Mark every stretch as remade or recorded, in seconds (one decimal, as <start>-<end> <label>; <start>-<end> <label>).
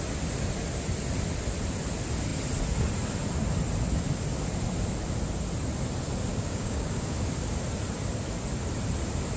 0.0-6.3 recorded; 6.3-6.9 remade; 6.9-9.4 recorded